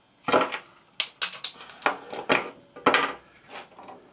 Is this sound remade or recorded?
recorded